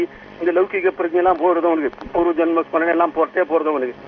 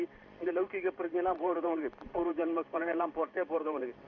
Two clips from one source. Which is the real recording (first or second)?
first